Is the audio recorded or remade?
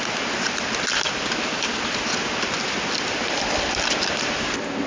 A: recorded